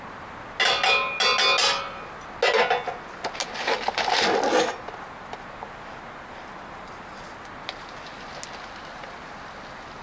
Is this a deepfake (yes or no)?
no